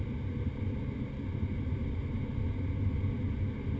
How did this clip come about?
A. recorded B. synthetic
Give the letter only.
A